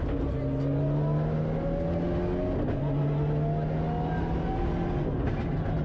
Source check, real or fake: real